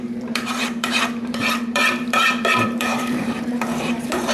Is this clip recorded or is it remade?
remade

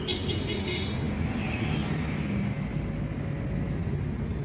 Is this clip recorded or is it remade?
recorded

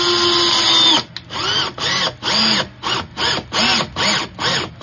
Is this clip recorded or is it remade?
recorded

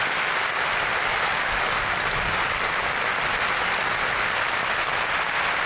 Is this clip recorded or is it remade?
recorded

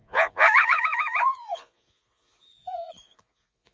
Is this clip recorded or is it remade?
remade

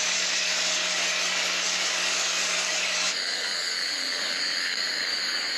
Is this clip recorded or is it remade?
remade